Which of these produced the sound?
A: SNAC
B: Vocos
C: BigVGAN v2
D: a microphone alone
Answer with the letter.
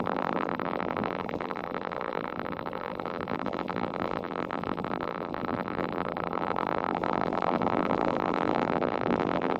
C